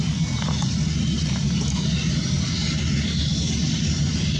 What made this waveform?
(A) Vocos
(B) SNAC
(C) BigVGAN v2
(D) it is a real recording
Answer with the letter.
D